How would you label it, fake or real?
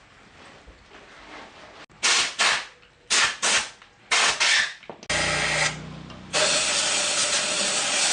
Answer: real